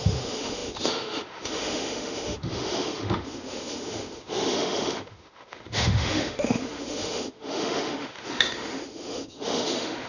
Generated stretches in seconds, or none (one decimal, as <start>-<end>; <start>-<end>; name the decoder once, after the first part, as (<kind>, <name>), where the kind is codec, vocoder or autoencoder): 0.0-10.1 (autoencoder, DAC-VAE)